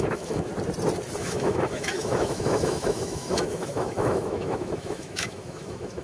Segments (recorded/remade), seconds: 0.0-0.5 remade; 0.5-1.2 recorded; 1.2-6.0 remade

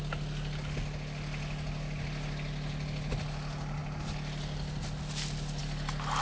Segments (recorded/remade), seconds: 0.0-6.2 recorded

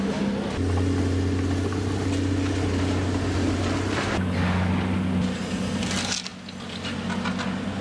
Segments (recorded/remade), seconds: 0.0-7.8 recorded

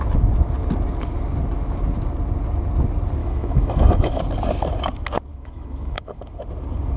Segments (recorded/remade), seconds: 0.0-3.2 recorded; 3.2-4.2 remade; 4.2-5.3 recorded; 5.3-6.4 remade; 6.4-7.0 recorded

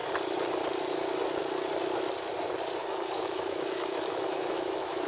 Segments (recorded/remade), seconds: 0.0-2.8 recorded; 2.8-5.1 remade

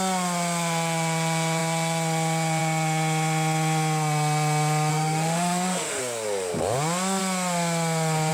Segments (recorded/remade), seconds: 0.0-4.9 recorded; 4.9-6.0 remade; 6.0-8.3 recorded

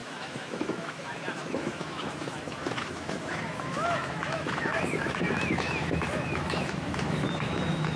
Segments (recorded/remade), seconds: 0.0-8.0 remade